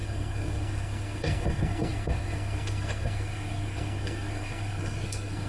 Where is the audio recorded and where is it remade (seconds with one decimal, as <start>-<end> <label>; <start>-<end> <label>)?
0.0-5.5 remade

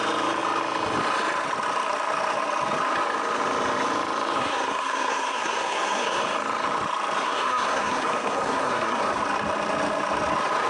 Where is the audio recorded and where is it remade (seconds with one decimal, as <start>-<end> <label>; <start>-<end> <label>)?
0.0-4.4 recorded; 4.4-6.2 remade; 6.2-7.2 recorded; 7.2-9.0 remade; 9.0-10.7 recorded

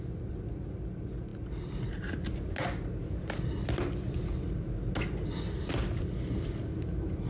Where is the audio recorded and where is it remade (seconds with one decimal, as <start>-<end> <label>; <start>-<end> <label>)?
0.0-7.3 recorded

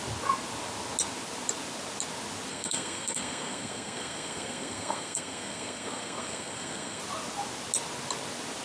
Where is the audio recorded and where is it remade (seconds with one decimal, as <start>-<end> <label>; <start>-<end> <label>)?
0.0-2.5 recorded; 2.5-7.0 remade; 7.0-8.6 recorded

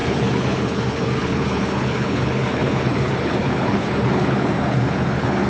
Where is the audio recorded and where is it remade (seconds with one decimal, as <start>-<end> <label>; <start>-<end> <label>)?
0.0-5.5 remade